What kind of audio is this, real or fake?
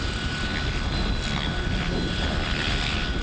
real